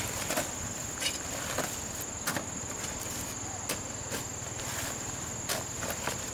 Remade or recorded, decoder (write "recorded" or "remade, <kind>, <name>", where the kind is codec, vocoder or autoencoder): recorded